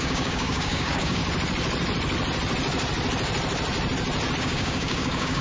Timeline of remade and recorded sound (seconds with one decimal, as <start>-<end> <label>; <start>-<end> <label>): 0.0-1.2 remade; 1.2-4.4 recorded; 4.4-5.4 remade